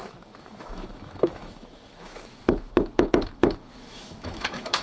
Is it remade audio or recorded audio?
remade